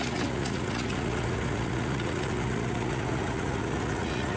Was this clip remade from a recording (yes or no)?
yes